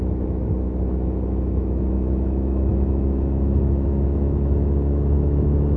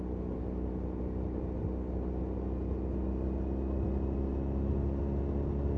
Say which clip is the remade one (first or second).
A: first